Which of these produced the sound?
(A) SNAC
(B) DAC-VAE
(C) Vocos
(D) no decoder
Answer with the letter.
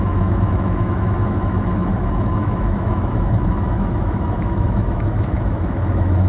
B